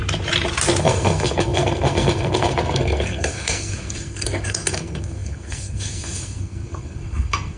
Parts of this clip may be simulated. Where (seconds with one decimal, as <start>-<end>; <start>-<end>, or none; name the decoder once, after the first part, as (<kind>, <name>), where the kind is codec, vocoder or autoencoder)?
0.8-7.6 (codec, SNAC)